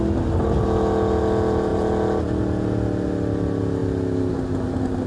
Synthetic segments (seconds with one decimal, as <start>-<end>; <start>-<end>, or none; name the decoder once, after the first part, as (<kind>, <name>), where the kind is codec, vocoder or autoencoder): none